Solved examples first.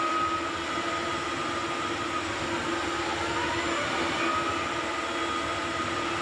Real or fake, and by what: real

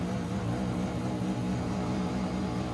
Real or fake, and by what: real